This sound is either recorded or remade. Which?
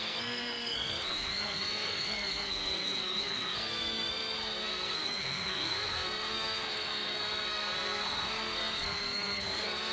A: remade